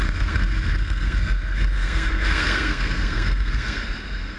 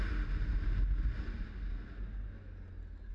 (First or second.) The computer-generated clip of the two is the first